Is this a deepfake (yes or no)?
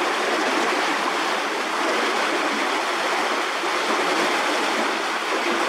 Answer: no